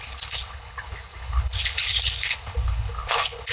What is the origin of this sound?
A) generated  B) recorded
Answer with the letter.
A